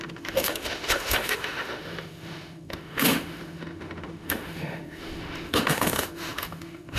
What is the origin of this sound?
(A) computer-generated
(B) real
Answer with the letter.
A